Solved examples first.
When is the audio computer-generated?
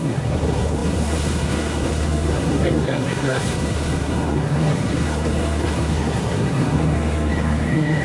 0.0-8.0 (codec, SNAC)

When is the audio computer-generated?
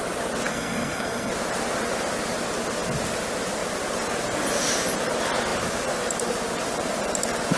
0.5-1.3 (codec, SNAC)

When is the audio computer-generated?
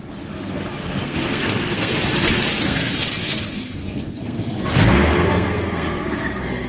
0.0-1.9 (codec, SNAC); 2.6-6.7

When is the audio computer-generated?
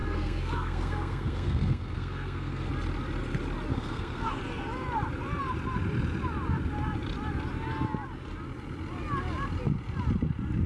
0.0-2.7 (codec, SNAC); 3.7-4.4